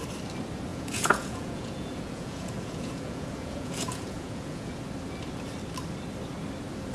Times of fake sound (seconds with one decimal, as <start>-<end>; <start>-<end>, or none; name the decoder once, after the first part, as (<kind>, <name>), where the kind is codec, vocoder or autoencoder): 0.7-4.8 (vocoder, Vocos)